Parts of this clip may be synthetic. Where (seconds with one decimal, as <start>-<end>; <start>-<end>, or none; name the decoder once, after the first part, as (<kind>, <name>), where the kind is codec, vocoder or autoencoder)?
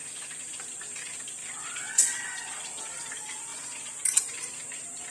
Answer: 0.0-0.6 (vocoder, Vocos); 1.4-2.6; 3.5-4.4